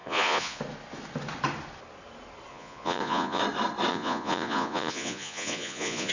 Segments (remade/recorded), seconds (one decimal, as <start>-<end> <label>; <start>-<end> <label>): 0.0-0.6 remade; 0.6-2.5 recorded; 2.5-3.4 remade; 3.4-3.9 recorded; 3.9-6.1 remade